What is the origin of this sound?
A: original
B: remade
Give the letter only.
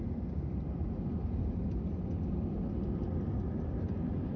A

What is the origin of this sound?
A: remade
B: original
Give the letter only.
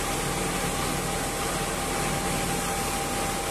B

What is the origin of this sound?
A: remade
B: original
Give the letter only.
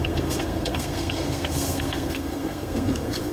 A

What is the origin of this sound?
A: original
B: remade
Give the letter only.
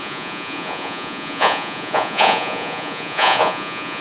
B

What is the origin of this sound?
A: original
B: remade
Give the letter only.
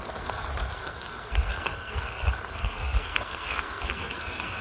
B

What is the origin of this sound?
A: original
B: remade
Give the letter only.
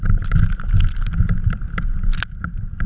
A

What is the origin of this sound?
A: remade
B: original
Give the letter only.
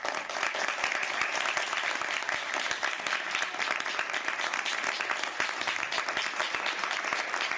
B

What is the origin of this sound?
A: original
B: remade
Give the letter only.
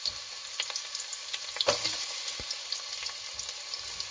A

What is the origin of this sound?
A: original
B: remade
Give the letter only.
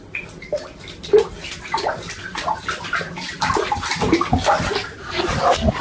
A